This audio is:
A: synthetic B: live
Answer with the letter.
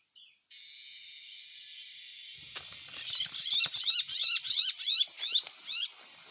A